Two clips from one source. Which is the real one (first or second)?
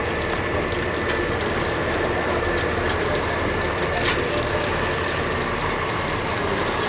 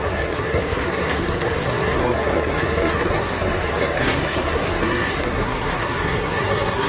first